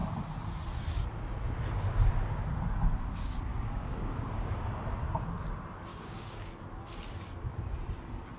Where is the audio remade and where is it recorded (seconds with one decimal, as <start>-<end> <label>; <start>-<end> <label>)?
0.0-3.5 recorded; 3.5-4.5 remade; 4.5-5.9 recorded; 5.9-6.5 remade; 6.5-8.4 recorded